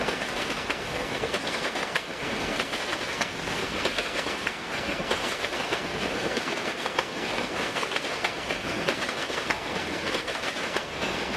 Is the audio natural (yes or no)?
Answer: no